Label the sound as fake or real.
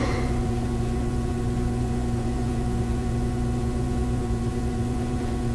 fake